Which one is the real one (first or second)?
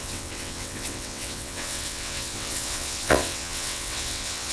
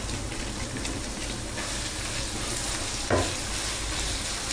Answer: second